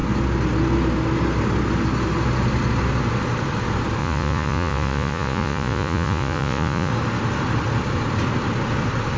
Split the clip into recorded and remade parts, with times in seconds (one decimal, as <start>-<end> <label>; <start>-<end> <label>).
0.0-4.0 recorded; 4.0-6.9 remade; 6.9-9.2 recorded